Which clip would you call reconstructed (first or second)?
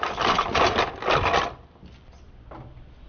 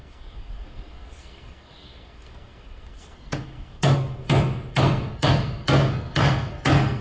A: second